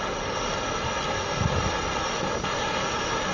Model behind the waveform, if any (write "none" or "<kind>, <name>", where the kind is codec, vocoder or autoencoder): none